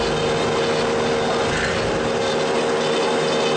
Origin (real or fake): real